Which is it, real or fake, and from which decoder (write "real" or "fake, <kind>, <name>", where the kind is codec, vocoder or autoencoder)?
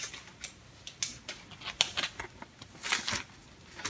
real